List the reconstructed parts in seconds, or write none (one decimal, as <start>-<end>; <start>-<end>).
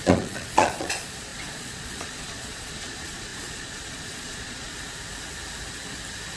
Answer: 0.0-4.7